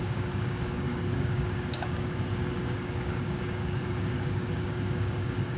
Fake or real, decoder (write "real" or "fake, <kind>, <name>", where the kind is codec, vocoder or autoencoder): fake, codec, DAC